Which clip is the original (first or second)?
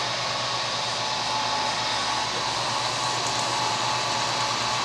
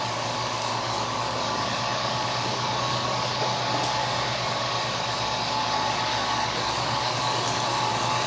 first